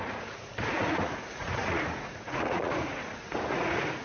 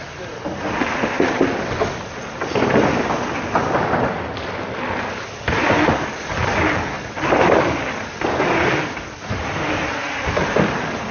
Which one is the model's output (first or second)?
first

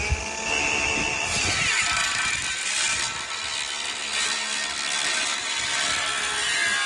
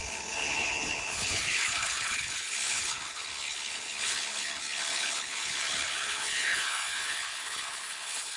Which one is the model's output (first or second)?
second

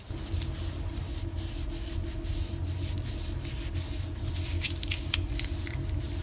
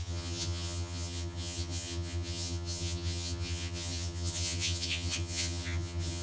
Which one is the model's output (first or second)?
second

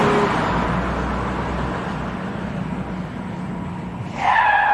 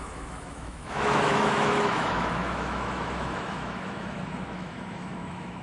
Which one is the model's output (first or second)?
second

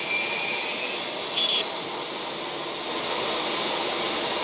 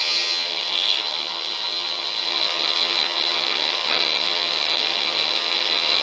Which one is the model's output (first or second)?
second